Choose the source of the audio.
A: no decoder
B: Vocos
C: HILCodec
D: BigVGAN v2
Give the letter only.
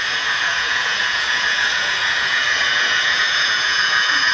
B